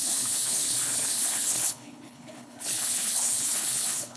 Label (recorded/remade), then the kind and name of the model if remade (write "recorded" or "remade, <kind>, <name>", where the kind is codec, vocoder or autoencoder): remade, codec, HILCodec